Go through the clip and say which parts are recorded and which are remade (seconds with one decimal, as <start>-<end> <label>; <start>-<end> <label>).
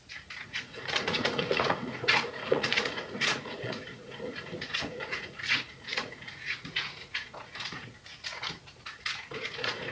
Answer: 0.0-9.9 remade